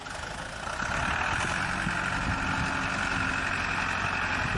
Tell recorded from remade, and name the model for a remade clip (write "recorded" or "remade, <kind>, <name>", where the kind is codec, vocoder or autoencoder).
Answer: recorded